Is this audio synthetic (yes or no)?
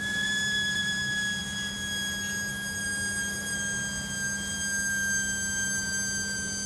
no